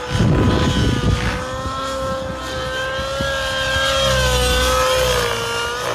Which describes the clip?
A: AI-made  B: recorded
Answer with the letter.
B